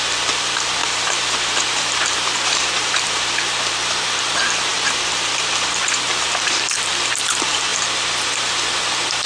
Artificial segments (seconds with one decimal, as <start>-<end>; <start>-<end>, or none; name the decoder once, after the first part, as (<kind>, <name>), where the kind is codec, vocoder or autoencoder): 0.0-9.3 (vocoder, BigVGAN v2)